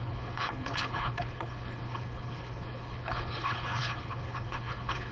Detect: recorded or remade remade